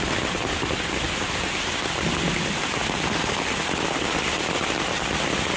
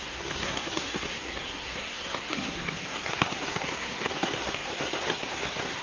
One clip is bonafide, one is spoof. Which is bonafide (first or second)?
first